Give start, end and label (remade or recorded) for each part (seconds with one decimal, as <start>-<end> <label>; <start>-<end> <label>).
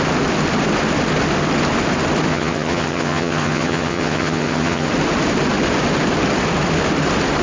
0.0-2.3 recorded; 2.3-4.9 remade; 4.9-7.4 recorded